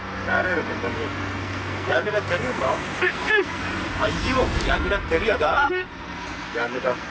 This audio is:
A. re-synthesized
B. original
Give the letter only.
A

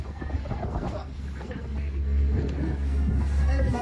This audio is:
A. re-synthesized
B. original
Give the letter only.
A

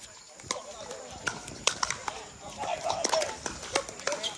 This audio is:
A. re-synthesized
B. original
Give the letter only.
B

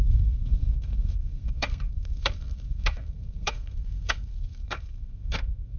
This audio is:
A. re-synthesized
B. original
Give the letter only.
A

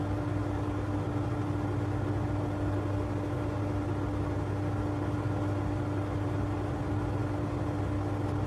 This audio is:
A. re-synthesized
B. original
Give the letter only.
B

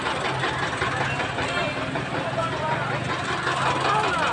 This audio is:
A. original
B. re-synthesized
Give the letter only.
A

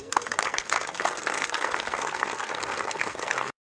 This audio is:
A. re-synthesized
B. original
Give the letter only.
A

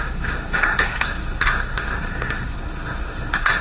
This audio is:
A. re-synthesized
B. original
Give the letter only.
A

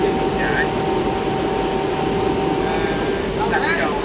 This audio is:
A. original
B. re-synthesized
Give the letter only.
A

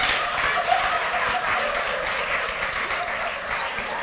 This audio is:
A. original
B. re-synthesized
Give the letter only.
A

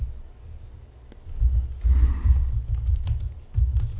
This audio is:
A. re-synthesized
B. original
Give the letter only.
B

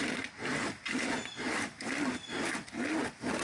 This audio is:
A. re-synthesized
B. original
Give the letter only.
B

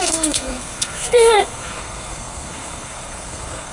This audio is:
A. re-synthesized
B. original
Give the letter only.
A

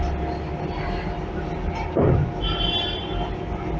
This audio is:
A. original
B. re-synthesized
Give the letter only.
A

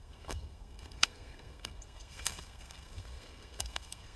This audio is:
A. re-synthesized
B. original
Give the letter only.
A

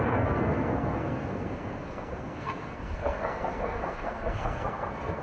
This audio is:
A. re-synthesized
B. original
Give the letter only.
A